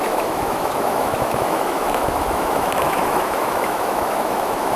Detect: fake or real fake